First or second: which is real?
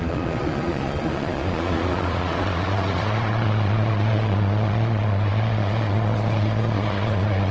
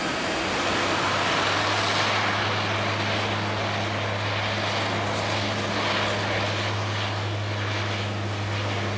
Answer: second